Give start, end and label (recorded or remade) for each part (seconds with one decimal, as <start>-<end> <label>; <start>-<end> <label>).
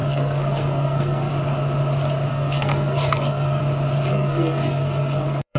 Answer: 0.0-1.3 remade; 1.3-2.3 recorded; 2.3-3.6 remade; 3.6-4.1 recorded; 4.1-5.6 remade